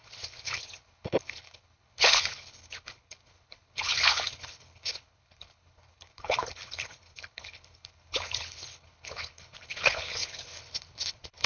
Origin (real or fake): fake